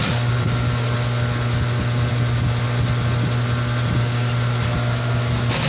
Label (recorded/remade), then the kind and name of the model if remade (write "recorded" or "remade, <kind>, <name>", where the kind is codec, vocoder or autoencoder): recorded